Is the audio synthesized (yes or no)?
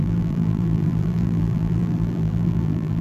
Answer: yes